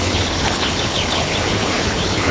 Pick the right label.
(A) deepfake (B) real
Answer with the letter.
A